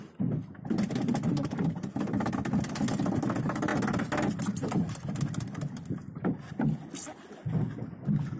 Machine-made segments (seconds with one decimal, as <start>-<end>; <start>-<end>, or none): 1.3-2.3